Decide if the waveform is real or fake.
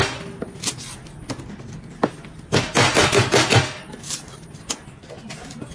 real